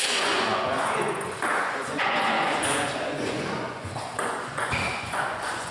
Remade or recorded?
remade